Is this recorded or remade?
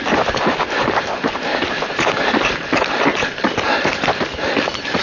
recorded